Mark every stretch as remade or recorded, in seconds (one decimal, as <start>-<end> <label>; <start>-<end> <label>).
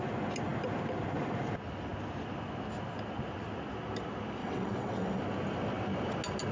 0.0-4.4 recorded; 4.4-5.2 remade; 5.2-6.5 recorded